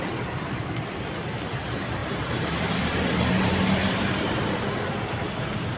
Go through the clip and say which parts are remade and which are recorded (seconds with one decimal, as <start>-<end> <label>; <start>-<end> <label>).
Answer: 0.0-2.0 recorded; 2.0-4.5 remade; 4.5-5.8 recorded